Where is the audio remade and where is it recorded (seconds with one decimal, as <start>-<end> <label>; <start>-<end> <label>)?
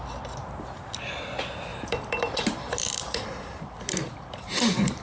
0.0-1.7 recorded; 1.7-5.0 remade